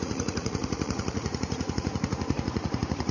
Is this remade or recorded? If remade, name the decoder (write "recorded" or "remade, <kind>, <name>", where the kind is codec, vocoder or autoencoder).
remade, vocoder, Vocos